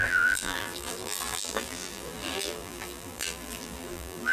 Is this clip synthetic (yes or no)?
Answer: yes